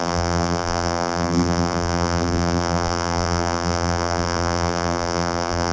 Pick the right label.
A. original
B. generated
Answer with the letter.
B